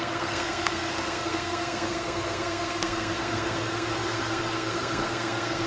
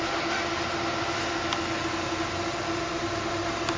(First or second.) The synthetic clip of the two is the first